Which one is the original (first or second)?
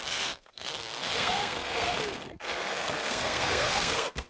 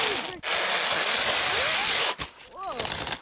second